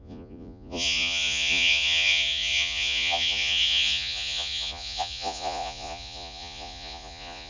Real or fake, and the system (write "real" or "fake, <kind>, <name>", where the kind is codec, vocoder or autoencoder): fake, vocoder, Vocos